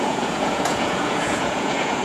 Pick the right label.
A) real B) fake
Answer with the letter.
B